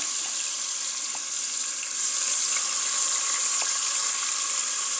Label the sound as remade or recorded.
remade